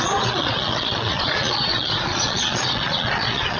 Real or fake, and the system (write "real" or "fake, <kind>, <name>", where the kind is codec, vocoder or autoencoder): fake, vocoder, Vocos